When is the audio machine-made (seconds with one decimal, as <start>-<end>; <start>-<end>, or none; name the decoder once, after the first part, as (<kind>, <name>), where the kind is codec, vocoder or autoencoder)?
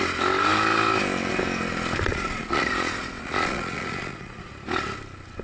2.1-4.5 (vocoder, Vocos)